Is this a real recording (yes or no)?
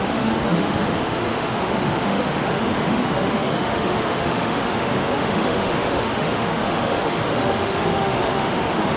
no